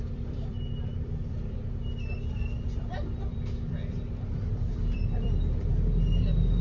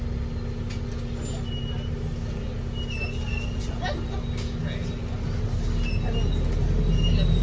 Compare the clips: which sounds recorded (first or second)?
second